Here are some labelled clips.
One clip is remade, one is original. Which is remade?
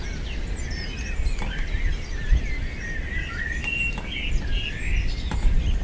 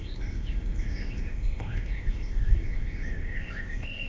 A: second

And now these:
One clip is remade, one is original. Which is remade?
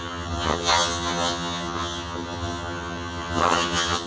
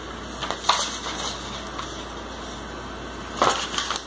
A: first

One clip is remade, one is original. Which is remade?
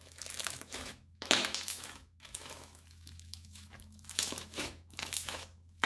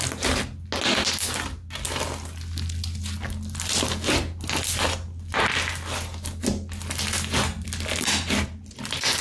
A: first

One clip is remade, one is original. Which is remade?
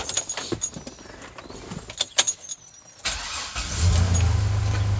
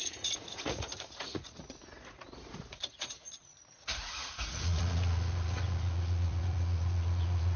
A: second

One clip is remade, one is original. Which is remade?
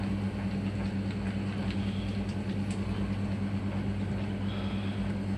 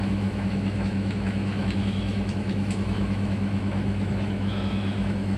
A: second